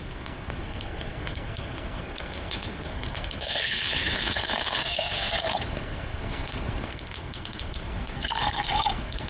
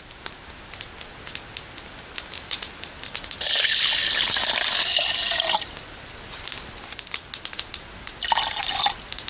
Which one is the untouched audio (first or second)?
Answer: second